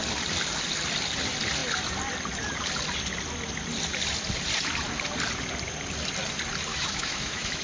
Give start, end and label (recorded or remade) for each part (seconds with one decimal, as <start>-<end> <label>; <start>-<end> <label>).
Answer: 0.0-6.7 recorded; 6.7-7.6 remade

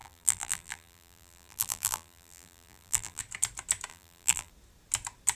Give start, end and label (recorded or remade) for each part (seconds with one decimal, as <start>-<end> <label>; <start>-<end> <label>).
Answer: 0.0-3.2 remade; 3.2-3.9 recorded; 3.9-4.5 remade; 4.5-5.3 recorded

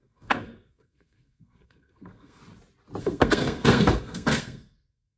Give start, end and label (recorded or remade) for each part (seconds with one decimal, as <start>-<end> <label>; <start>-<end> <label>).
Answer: 0.0-2.4 remade; 2.4-3.0 recorded; 3.0-5.2 remade

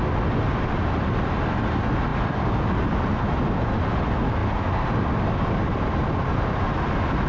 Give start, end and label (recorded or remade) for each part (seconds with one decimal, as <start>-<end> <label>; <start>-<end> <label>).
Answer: 0.0-7.3 recorded

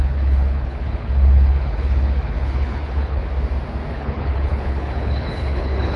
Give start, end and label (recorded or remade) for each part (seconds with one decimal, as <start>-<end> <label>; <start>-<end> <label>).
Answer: 0.0-3.2 remade; 3.2-3.9 recorded; 3.9-6.0 remade

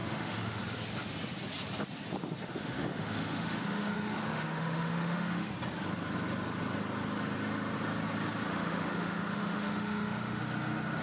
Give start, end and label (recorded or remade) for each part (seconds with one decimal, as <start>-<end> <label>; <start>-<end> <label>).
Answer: 0.0-0.6 remade; 0.6-2.2 recorded; 2.2-5.5 remade; 5.5-8.5 recorded; 8.5-10.4 remade; 10.4-11.0 recorded

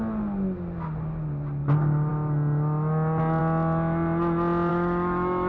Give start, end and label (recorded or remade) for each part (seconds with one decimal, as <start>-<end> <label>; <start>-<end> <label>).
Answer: 0.0-4.7 recorded; 4.7-5.5 remade